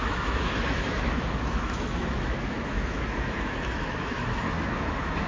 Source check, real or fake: fake